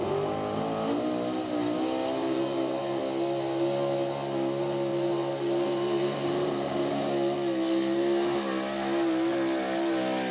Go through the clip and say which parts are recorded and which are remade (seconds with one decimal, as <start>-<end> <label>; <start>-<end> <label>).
0.0-2.2 recorded; 2.2-3.0 remade; 3.0-4.9 recorded; 4.9-6.9 remade; 6.9-10.3 recorded